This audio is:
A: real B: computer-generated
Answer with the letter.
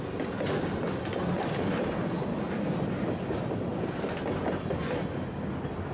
A